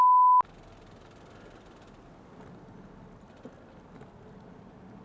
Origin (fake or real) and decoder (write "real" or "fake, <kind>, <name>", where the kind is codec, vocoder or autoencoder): real